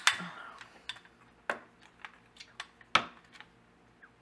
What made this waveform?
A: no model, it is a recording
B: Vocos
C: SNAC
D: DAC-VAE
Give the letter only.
A